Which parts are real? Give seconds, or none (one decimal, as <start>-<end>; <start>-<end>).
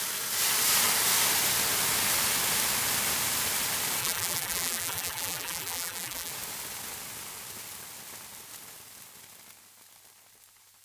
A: 0.0-4.0; 6.3-10.8